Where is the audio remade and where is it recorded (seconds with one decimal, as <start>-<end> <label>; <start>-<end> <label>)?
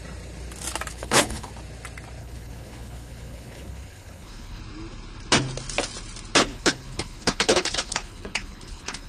0.0-0.9 recorded; 0.9-1.5 remade; 1.5-2.2 recorded; 2.2-4.6 remade; 4.6-6.4 recorded; 6.4-9.1 remade